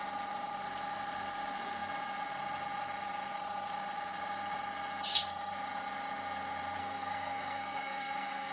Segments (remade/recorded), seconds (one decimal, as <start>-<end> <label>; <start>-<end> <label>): 0.0-6.8 recorded; 6.8-8.5 remade